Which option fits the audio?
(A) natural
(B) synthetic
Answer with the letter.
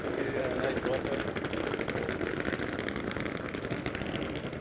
A